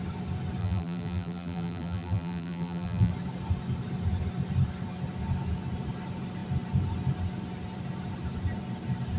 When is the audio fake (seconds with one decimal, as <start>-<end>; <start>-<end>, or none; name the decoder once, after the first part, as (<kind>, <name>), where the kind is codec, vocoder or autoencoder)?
0.6-3.1 (vocoder, BigVGAN v2)